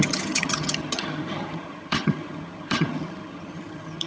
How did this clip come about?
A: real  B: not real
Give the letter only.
B